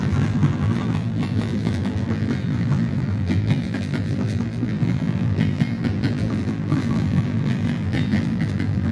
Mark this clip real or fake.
fake